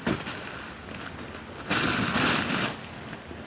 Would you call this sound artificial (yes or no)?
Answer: no